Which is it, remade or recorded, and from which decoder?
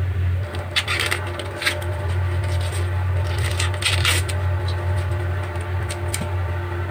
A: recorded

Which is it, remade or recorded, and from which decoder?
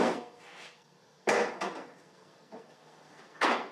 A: remade, codec, SNAC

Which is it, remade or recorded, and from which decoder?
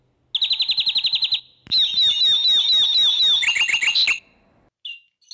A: recorded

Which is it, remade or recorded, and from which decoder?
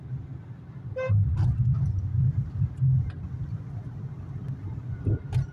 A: recorded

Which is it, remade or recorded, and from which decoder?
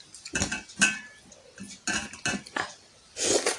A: recorded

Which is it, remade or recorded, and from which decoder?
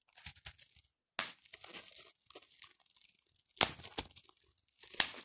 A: recorded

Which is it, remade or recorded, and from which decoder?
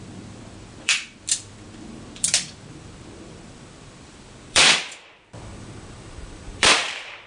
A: remade, vocoder, BigVGAN v2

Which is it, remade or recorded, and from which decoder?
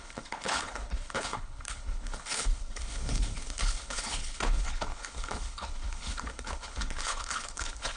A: remade, codec, HILCodec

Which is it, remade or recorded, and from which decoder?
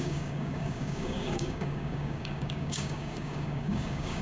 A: remade, codec, DAC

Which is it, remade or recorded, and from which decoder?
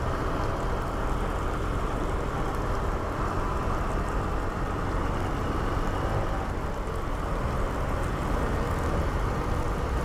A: recorded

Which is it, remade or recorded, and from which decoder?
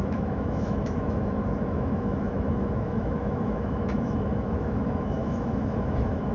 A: remade, autoencoder, DAC-VAE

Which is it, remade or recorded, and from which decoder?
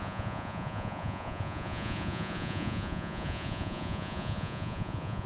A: remade, vocoder, Vocos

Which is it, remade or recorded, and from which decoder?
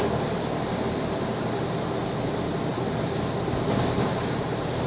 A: recorded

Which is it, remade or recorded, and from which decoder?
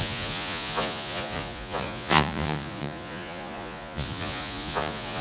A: remade, vocoder, Vocos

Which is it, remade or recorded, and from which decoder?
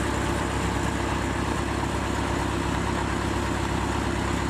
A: recorded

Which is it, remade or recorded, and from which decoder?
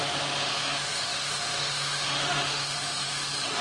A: remade, autoencoder, DAC-VAE